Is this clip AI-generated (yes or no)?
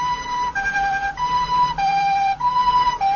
yes